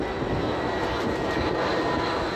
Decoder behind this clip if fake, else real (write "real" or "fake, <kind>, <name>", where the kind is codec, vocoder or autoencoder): real